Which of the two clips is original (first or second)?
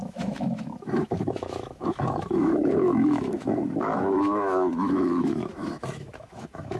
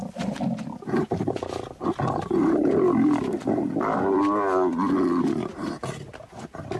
second